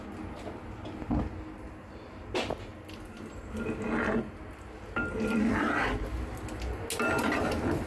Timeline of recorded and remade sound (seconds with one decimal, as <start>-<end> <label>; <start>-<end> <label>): 0.0-7.9 recorded